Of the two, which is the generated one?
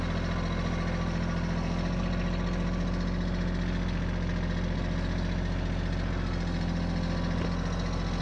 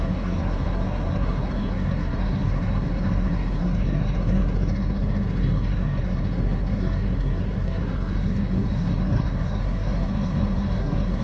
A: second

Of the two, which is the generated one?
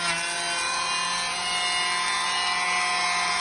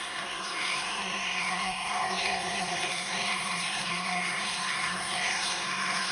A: second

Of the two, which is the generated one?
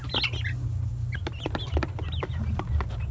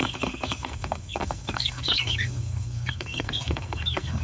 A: second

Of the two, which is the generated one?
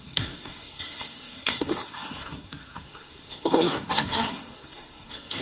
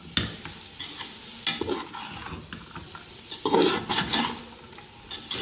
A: first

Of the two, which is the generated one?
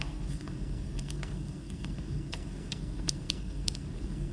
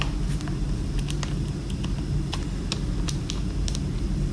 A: first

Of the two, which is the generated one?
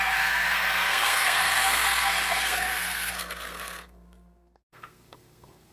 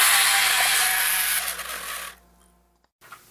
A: first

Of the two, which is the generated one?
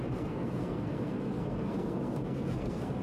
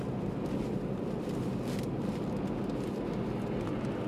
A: first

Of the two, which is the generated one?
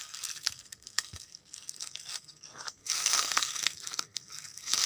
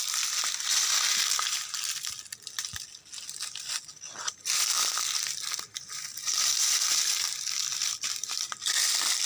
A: first